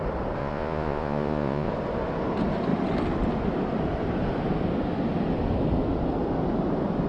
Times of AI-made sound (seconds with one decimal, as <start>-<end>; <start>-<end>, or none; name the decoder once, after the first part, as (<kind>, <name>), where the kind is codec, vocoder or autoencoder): 0.4-1.7 (vocoder, Vocos)